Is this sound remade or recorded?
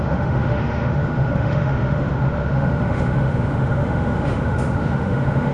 remade